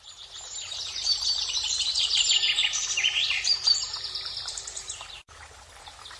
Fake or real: fake